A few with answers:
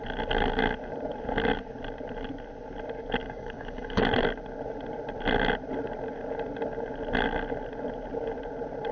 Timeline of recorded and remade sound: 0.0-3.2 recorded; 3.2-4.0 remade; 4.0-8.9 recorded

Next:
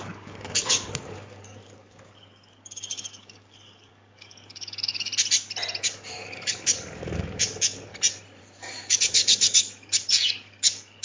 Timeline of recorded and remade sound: 0.0-5.1 remade; 5.1-5.8 recorded; 5.8-7.9 remade; 7.9-8.4 recorded; 8.4-11.0 remade

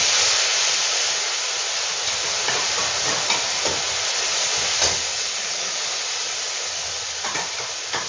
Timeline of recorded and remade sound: 0.0-5.1 recorded; 5.1-5.9 remade; 5.9-8.1 recorded

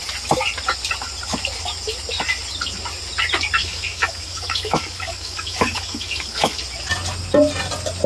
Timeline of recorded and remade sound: 0.0-3.6 recorded; 3.6-6.6 remade; 6.6-8.1 recorded

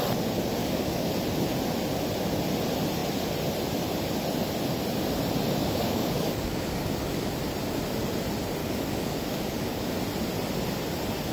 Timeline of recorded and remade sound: 0.0-0.6 recorded; 0.6-1.1 remade; 1.1-5.6 recorded; 5.6-7.3 remade; 7.3-8.6 recorded; 8.6-9.9 remade; 9.9-11.3 recorded

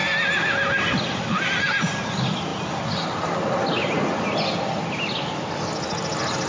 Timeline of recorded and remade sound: 0.0-6.5 recorded

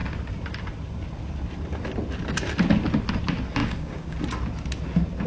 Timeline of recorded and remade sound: 0.0-3.6 recorded; 3.6-4.2 remade; 4.2-5.3 recorded